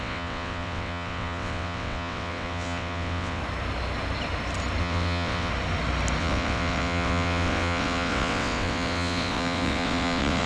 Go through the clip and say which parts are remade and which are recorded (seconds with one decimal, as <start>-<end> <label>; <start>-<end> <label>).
0.0-3.4 remade; 3.4-4.8 recorded; 4.8-5.5 remade; 5.5-6.2 recorded; 6.2-10.5 remade